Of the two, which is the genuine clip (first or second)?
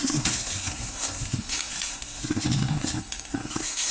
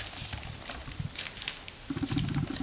second